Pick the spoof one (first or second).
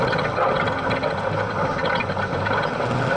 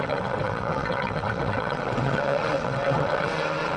second